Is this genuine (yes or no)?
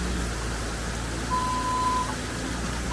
yes